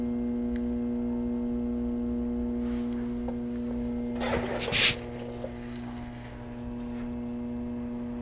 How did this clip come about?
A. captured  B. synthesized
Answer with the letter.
A